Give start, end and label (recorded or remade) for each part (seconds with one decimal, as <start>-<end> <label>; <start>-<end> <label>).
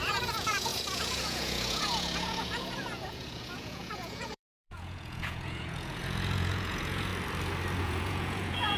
0.0-7.1 remade; 7.1-7.8 recorded; 7.8-8.8 remade